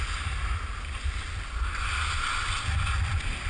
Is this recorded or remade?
recorded